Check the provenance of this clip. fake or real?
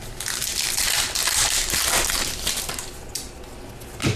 real